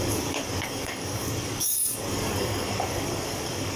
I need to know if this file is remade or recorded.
remade